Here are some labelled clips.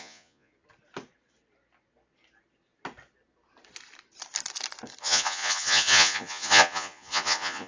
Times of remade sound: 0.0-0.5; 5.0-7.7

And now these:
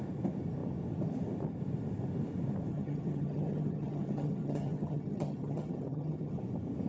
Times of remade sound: 2.7-6.4